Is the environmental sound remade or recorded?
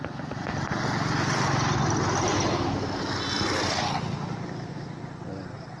recorded